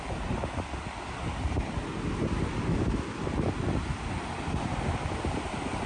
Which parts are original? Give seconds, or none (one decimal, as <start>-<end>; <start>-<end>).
0.0-5.9